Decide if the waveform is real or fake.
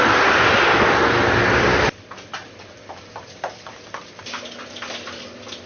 real